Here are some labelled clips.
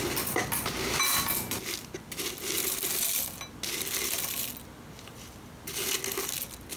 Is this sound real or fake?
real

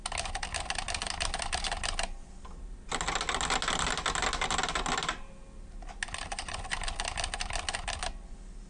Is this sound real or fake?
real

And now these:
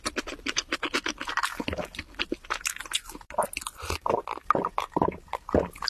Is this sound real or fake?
real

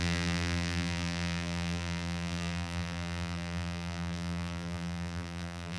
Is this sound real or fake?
fake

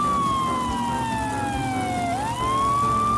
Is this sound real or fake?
real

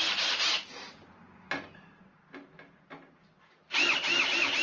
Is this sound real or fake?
real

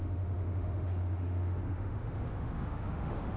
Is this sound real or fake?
fake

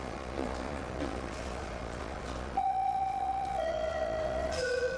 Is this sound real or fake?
fake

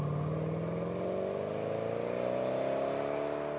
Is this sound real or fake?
real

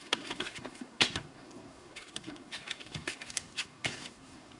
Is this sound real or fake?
fake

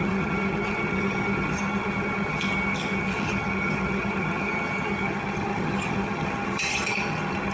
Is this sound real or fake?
fake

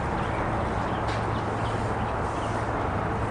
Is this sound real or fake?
real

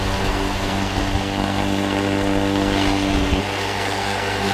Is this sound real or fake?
fake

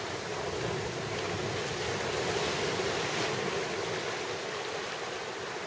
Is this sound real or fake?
real